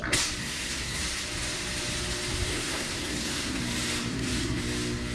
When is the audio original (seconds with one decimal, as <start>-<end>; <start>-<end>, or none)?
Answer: 0.0-0.4; 1.0-2.5; 3.6-4.1; 4.6-5.1